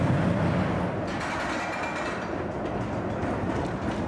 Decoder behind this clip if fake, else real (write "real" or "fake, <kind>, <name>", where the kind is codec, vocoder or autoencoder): real